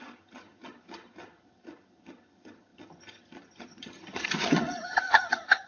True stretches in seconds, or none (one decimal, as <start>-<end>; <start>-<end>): none